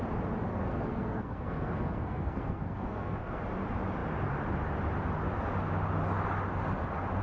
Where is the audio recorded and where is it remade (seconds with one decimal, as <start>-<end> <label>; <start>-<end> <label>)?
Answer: 0.0-0.5 recorded; 0.5-3.4 remade; 3.4-7.2 recorded